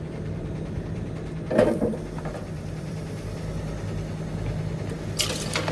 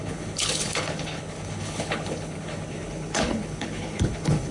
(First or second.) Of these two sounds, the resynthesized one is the second